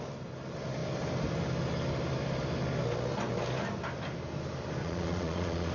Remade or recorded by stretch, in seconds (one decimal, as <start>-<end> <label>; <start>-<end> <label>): 0.0-4.8 recorded; 4.8-5.7 remade